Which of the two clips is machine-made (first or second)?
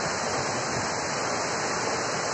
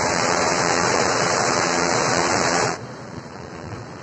second